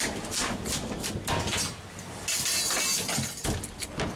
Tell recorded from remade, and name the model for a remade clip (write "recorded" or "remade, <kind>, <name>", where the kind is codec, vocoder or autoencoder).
recorded